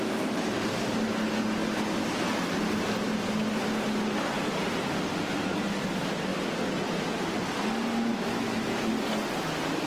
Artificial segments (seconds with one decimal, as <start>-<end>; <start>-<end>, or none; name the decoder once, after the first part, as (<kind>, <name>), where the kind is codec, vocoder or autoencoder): 8.1-8.9 (autoencoder, DAC-VAE)

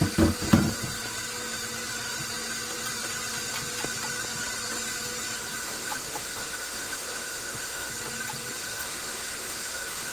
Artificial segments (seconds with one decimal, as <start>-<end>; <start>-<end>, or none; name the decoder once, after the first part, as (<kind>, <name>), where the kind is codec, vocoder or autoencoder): 5.6-7.9 (autoencoder, DAC-VAE); 8.6-10.1

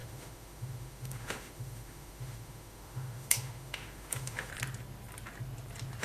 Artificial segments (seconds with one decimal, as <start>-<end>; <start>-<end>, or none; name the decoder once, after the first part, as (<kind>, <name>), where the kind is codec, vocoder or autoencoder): 0.0-4.5 (autoencoder, DAC-VAE)